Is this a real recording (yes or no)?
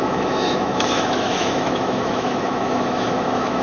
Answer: no